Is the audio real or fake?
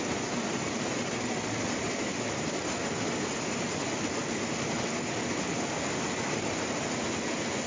real